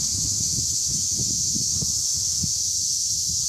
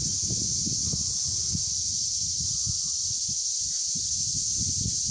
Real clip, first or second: second